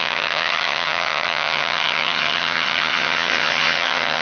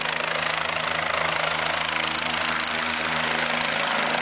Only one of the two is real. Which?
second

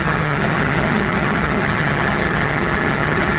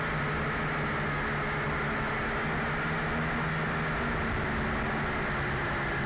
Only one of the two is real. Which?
second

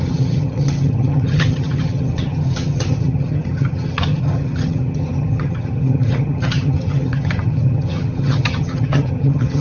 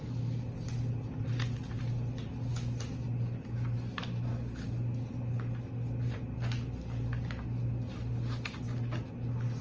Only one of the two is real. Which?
second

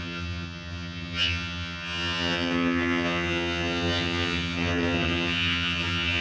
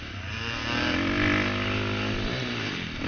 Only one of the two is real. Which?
second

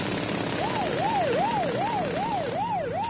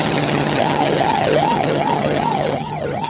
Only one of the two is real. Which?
first